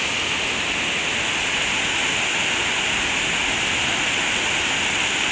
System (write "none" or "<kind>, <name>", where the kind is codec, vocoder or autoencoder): none